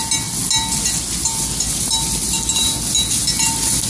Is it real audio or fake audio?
real